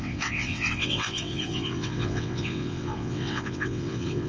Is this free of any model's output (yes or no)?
no